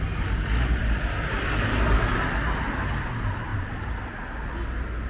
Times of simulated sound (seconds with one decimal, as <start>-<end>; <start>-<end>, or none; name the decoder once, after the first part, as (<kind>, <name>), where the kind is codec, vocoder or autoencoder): none

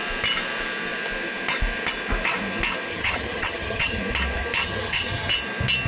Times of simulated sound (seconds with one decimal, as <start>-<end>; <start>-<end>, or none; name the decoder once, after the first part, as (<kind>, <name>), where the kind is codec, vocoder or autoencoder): 2.9-4.0 (vocoder, HiFi-GAN); 4.6-5.3

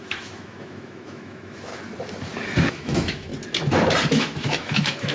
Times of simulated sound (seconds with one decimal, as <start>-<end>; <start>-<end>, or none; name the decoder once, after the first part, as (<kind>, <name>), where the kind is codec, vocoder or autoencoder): 0.0-1.7 (autoencoder, DAC-VAE); 2.7-3.3; 4.1-5.1

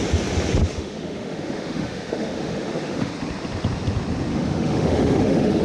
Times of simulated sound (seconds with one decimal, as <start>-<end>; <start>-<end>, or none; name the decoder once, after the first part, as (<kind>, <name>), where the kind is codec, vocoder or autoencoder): 0.7-3.1 (autoencoder, DAC-VAE); 4.3-5.6